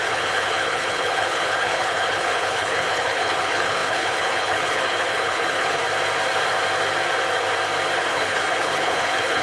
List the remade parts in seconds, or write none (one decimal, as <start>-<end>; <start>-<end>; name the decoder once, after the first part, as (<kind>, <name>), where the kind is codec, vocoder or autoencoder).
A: 0.0-5.8 (codec, HILCodec); 8.1-9.4